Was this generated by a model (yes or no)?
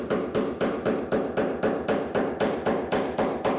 yes